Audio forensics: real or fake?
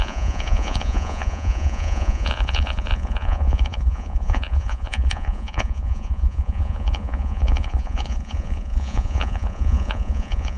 fake